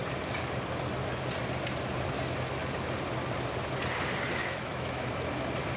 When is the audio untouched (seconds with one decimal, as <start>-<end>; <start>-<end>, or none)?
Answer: 0.0-4.4; 5.1-5.8